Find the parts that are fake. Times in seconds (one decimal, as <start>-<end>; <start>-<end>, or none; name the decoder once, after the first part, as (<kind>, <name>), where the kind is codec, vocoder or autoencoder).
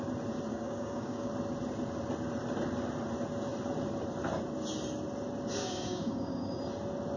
0.5-1.3 (codec, DAC); 5.6-6.6